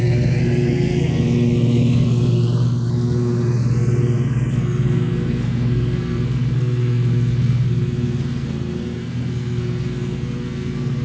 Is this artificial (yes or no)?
yes